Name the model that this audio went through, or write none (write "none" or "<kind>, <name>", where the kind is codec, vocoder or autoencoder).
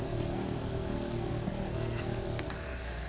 codec, SNAC